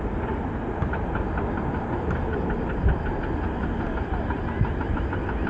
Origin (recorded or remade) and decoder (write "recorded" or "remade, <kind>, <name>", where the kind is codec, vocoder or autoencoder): recorded